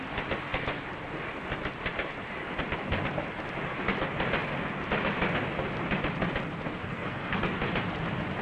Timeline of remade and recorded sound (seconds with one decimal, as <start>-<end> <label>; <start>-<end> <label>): 0.0-6.8 recorded; 6.8-7.4 remade; 7.4-8.4 recorded